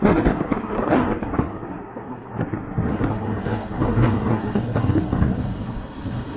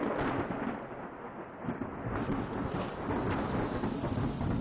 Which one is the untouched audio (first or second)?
second